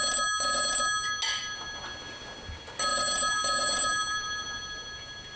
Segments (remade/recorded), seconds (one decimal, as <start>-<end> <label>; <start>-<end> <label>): 0.0-1.4 recorded; 1.4-2.2 remade; 2.2-2.9 recorded; 2.9-5.4 remade